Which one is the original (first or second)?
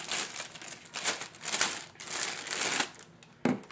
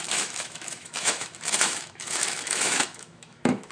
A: first